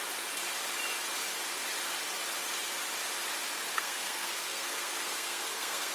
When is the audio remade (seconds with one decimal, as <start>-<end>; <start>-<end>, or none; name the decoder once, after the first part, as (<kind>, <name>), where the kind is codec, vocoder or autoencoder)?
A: 3.7-5.9 (codec, SNAC)

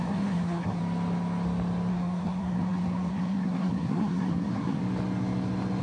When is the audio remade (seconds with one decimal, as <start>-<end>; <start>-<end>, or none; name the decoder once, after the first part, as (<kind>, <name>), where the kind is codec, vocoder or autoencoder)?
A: 0.0-0.8 (codec, SNAC); 1.9-4.8

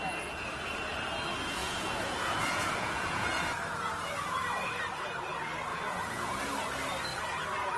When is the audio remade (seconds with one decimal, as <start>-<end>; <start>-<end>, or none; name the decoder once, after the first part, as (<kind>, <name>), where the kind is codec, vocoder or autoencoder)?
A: 1.6-3.4 (vocoder, Vocos); 5.7-6.3

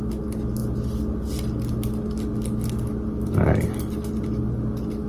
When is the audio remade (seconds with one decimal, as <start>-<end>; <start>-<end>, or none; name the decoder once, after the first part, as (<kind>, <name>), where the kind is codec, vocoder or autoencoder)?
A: none